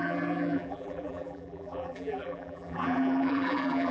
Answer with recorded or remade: remade